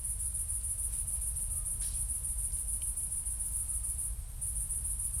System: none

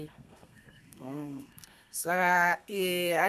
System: codec, SNAC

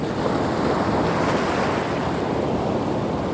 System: none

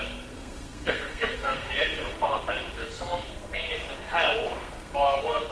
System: codec, SNAC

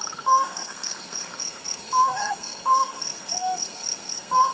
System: codec, SNAC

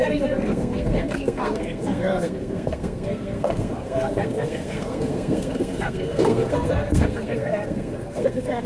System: codec, SNAC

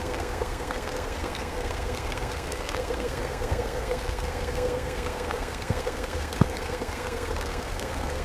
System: codec, SNAC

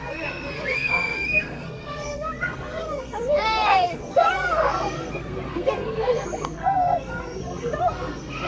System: codec, SNAC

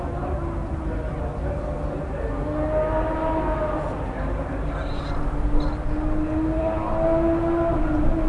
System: none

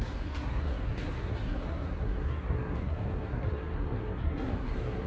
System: codec, SNAC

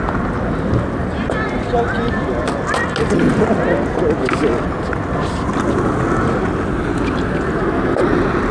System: none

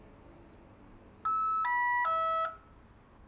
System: none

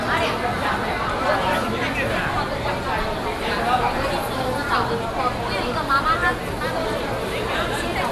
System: none